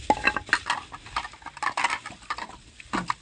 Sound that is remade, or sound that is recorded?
recorded